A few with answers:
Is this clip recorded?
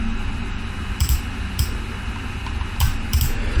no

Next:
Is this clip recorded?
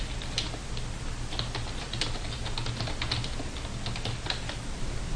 yes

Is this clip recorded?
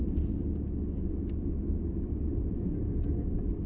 yes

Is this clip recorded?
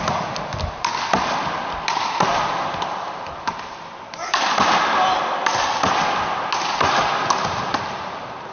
yes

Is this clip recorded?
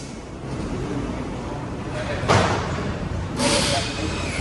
no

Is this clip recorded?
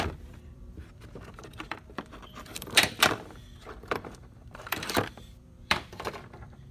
no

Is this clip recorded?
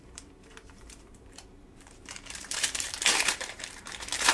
no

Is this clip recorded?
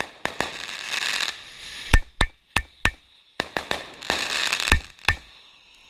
yes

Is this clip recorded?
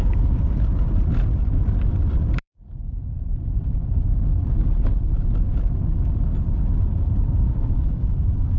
no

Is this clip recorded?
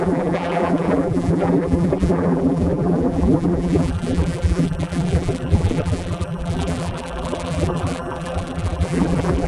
no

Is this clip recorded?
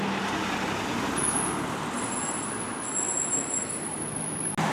yes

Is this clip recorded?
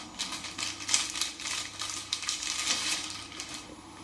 yes